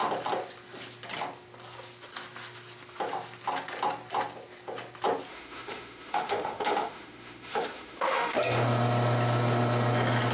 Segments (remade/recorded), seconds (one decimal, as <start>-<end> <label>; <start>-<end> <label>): 0.0-5.3 recorded; 5.3-8.4 remade; 8.4-10.3 recorded